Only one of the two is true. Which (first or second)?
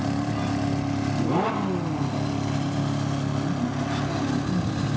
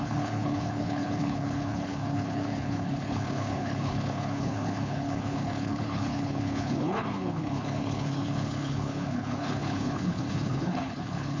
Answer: first